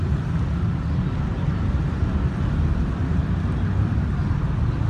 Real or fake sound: real